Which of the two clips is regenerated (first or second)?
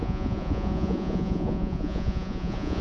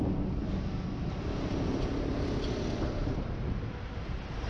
first